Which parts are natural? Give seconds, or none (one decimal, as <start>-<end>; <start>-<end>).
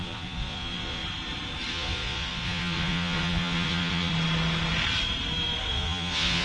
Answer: 1.0-1.7; 4.1-5.7